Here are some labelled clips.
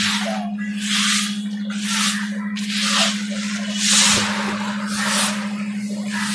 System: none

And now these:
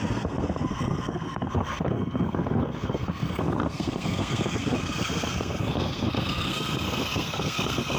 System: codec, SNAC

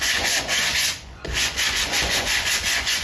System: vocoder, Vocos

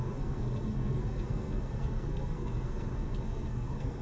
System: codec, SNAC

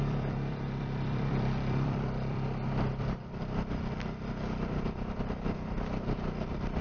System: vocoder, BigVGAN v2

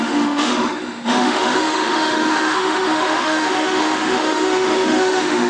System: autoencoder, DAC-VAE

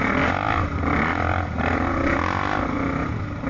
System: none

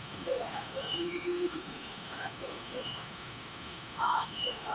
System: autoencoder, DAC-VAE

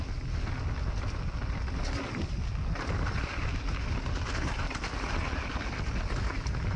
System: none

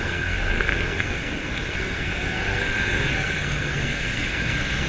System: codec, SNAC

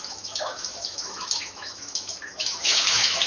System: autoencoder, DAC-VAE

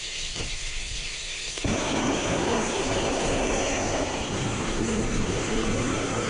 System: codec, SNAC